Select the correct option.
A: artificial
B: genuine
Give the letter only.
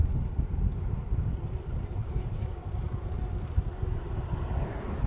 B